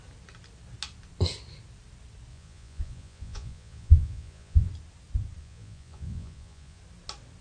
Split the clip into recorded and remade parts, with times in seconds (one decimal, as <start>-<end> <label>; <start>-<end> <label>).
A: 0.0-2.3 recorded; 2.3-4.7 remade; 4.7-5.4 recorded; 5.4-6.8 remade; 6.8-7.4 recorded